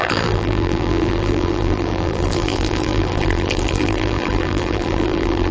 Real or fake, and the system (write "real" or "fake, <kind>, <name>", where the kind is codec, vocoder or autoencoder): fake, vocoder, BigVGAN v2